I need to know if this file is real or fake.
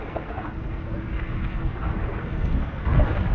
fake